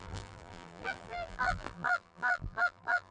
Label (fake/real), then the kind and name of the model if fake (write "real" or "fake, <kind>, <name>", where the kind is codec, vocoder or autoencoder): fake, vocoder, BigVGAN v2